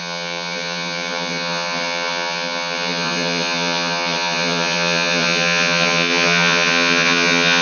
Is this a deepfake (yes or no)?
yes